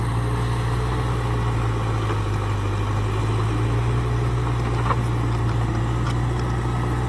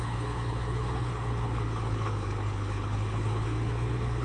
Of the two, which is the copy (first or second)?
second